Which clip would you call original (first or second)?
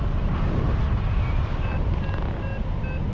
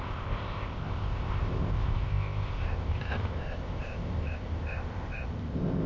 first